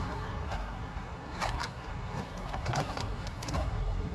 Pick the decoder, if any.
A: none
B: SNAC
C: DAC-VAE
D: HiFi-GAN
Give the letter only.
B